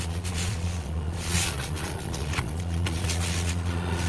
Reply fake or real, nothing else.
fake